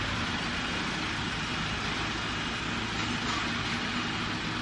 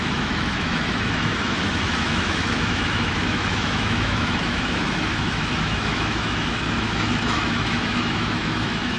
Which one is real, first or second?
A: first